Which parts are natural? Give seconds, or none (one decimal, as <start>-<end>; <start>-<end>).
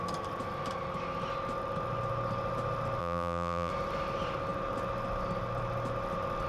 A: 0.0-3.0; 3.7-6.5